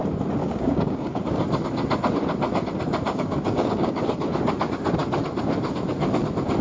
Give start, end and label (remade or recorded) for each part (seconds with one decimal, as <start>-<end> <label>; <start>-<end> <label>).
0.0-0.4 recorded; 0.4-1.2 remade; 1.2-3.1 recorded; 3.1-4.0 remade; 4.0-6.6 recorded